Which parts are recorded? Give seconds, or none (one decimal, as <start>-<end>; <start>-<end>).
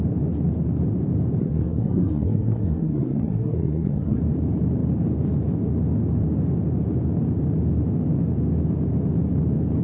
0.0-1.4; 4.2-9.8